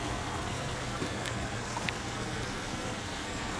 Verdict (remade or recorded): remade